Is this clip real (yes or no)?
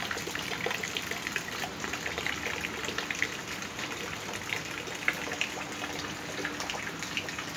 yes